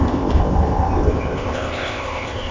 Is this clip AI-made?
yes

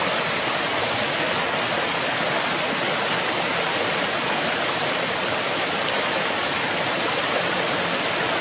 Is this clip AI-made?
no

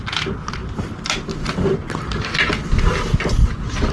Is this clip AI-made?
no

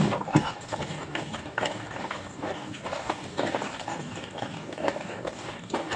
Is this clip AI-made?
yes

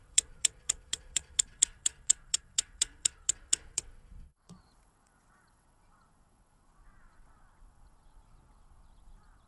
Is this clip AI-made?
yes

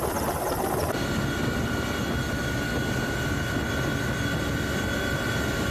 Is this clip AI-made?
no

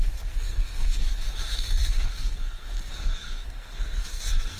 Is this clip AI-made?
yes